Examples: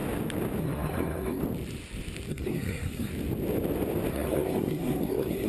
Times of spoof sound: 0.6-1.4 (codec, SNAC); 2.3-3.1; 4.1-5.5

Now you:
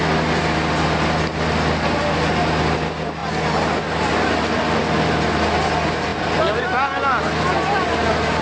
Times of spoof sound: none